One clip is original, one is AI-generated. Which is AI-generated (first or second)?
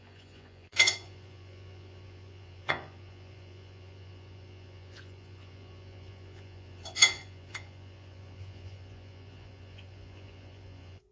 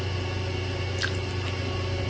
first